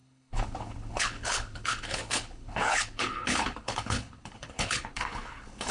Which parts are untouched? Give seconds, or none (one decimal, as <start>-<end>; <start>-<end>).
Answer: none